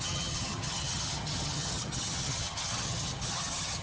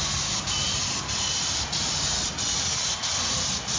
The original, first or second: second